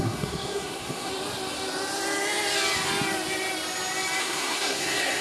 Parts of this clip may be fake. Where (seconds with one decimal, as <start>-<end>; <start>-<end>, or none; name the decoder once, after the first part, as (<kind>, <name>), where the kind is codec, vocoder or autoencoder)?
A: 0.0-1.1 (codec, SNAC); 4.2-5.2